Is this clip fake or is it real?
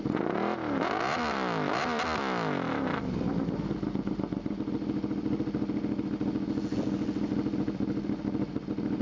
real